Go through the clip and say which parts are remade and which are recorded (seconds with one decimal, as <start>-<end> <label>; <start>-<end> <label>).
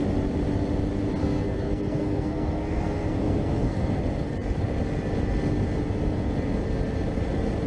0.0-1.2 recorded; 1.2-4.0 remade; 4.0-7.7 recorded